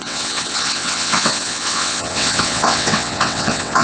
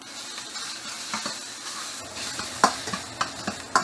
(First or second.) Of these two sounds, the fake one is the first